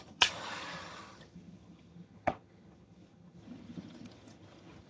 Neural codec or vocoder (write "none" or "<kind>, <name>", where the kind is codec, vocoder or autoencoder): vocoder, HiFi-GAN